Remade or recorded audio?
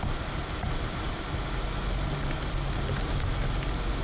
recorded